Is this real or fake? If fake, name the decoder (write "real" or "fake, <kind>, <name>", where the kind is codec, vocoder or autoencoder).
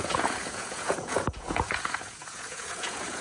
fake, vocoder, Vocos